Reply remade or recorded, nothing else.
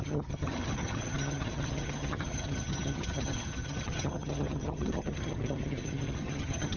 remade